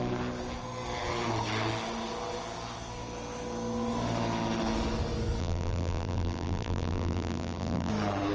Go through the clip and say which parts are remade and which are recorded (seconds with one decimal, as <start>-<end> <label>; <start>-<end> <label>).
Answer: 0.0-5.4 recorded; 5.4-7.9 remade; 7.9-8.3 recorded